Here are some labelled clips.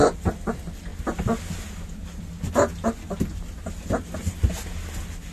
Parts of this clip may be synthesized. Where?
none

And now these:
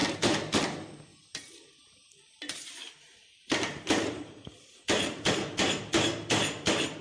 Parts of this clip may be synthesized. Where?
1.1-5.3